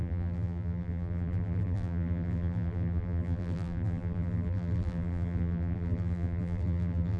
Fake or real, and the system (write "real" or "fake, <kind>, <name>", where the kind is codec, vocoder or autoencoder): fake, vocoder, BigVGAN v2